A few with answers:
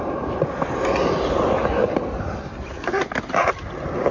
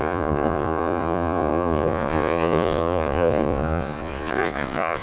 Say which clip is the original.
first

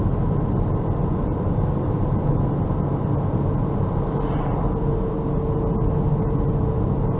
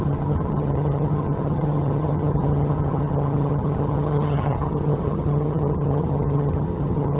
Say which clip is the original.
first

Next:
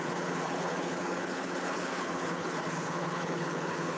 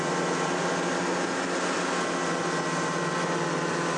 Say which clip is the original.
second